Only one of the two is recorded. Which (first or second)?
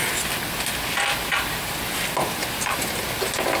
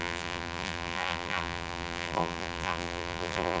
first